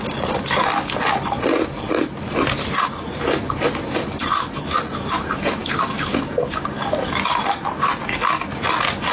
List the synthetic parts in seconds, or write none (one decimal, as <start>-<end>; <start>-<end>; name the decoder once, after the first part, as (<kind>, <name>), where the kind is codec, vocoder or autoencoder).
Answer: 5.6-7.0 (codec, DAC)